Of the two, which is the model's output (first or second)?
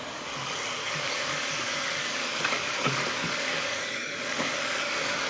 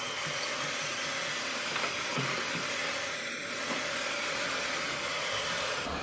first